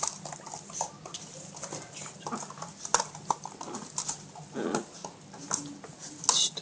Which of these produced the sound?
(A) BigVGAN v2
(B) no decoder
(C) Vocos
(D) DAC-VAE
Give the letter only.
B